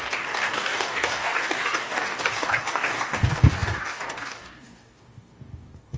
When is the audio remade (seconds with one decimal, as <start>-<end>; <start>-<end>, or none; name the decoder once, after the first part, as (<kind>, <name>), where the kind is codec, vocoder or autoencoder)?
0.0-6.0 (codec, DAC)